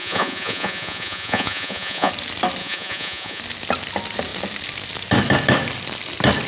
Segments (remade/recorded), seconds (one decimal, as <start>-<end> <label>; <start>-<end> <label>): 0.0-2.1 remade; 2.1-2.6 recorded; 2.6-3.4 remade; 3.4-6.5 recorded